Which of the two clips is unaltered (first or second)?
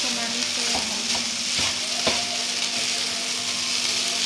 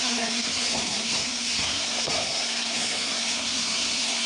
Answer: first